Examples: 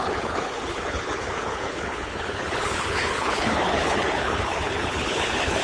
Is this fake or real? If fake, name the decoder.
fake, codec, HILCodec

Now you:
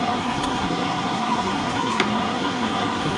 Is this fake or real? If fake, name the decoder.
fake, codec, SNAC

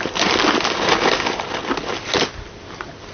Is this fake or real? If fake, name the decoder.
real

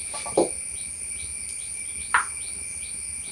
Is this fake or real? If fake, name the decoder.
real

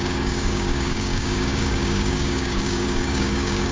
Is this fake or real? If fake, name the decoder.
fake, codec, DAC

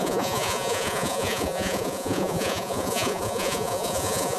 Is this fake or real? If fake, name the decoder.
fake, vocoder, Vocos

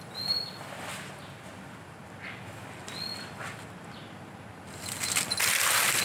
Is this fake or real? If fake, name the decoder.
real